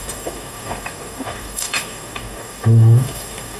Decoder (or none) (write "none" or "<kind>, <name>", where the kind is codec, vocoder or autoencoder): codec, DAC